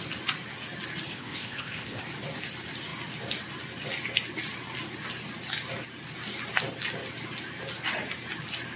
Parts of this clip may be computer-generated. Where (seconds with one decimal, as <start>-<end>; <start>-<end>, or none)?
1.1-2.0